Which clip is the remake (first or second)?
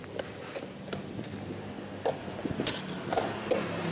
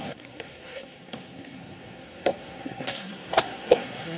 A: second